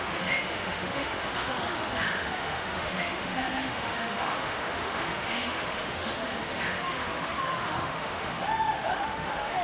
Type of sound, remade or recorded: remade